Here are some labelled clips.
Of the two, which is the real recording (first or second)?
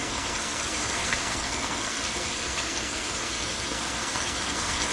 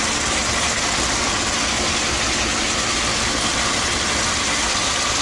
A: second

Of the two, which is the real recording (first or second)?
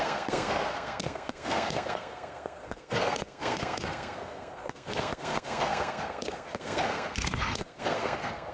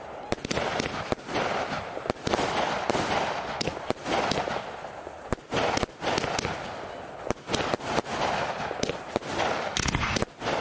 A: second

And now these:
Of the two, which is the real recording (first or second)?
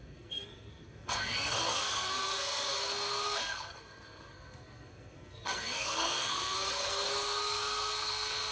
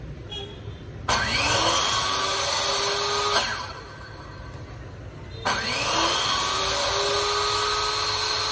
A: second